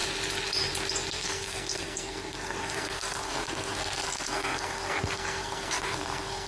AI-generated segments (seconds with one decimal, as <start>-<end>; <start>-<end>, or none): 1.1-6.5